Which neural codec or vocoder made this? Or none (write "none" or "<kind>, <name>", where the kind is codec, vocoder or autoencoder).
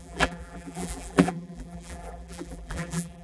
vocoder, BigVGAN v2